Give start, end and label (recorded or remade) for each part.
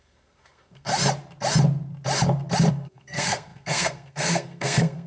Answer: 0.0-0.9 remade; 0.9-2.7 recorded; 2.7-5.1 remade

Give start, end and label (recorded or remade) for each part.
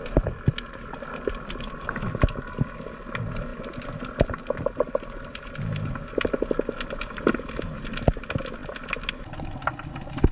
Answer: 0.0-10.3 recorded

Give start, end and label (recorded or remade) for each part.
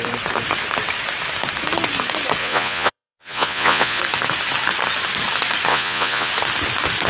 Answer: 0.0-2.4 recorded; 2.4-4.0 remade; 4.0-5.7 recorded; 5.7-6.3 remade; 6.3-7.1 recorded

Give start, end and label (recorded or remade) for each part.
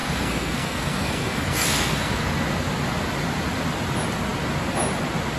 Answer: 0.0-2.3 remade; 2.3-5.4 recorded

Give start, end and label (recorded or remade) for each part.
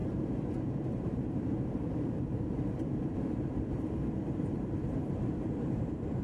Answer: 0.0-6.2 remade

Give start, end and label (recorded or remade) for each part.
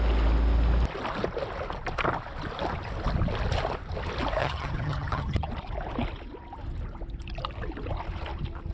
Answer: 0.0-4.4 recorded; 4.4-5.5 remade; 5.5-8.7 recorded